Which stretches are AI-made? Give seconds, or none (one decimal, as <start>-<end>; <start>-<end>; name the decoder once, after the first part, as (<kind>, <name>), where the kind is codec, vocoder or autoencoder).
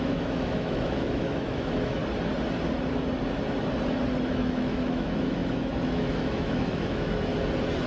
0.0-2.0 (autoencoder, DAC-VAE); 4.3-7.3